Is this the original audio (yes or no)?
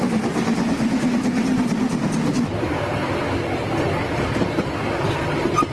yes